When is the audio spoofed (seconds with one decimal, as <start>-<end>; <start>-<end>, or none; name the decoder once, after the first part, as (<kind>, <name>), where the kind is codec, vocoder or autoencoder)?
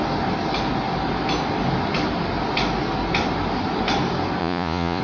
4.4-5.0 (vocoder, Vocos)